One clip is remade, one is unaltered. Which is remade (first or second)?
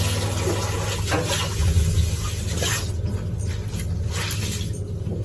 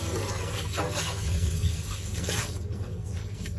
second